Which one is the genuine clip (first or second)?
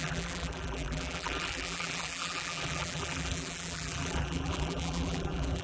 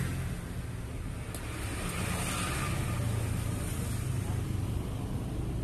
second